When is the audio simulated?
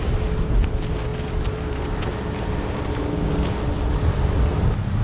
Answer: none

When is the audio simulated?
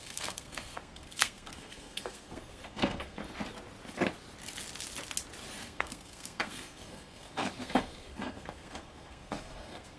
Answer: 0.0-3.2; 5.6-10.0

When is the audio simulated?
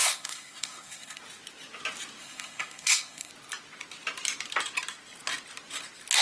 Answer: 0.0-1.2; 2.2-3.3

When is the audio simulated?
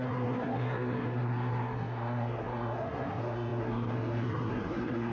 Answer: 0.0-5.1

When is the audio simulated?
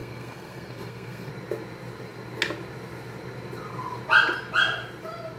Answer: 0.0-1.3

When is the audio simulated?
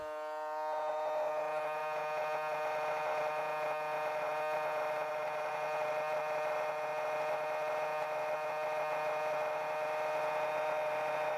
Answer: none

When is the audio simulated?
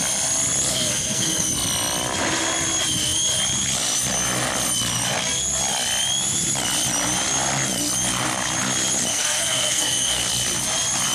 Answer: 0.7-1.5; 9.1-10.3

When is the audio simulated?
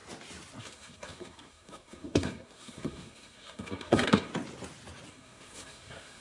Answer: 0.6-4.3; 5.1-6.2